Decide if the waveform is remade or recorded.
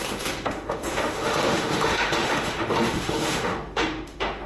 remade